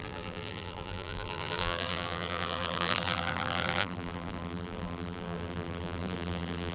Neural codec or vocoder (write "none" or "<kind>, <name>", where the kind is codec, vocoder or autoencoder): vocoder, BigVGAN v2